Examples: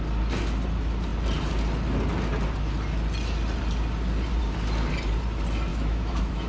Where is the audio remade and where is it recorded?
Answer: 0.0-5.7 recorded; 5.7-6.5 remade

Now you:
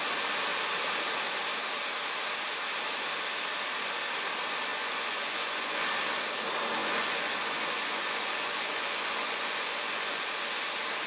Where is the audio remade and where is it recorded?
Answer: 0.0-4.7 recorded; 4.7-5.9 remade; 5.9-6.8 recorded; 6.8-10.2 remade; 10.2-11.1 recorded

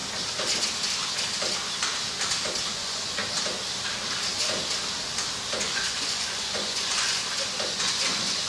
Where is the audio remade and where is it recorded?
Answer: 0.0-2.7 recorded; 2.7-3.2 remade; 3.2-5.6 recorded; 5.6-7.2 remade; 7.2-7.7 recorded; 7.7-8.5 remade

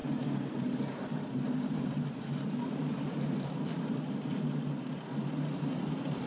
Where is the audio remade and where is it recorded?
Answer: 0.0-3.8 remade; 3.8-6.3 recorded

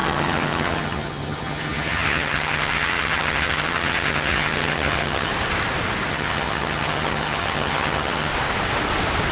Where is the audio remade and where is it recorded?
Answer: 0.0-5.3 remade; 5.3-6.1 recorded; 6.1-8.3 remade; 8.3-9.3 recorded

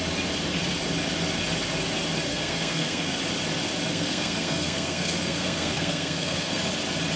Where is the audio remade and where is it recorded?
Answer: 0.0-2.3 recorded; 2.3-3.2 remade; 3.2-3.9 recorded; 3.9-6.6 remade; 6.6-7.2 recorded